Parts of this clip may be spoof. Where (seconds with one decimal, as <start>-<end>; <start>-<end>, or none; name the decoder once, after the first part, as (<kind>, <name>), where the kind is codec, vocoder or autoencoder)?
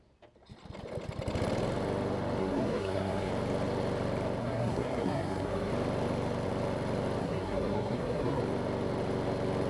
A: 2.4-3.3 (codec, SNAC); 4.4-5.7; 7.2-8.4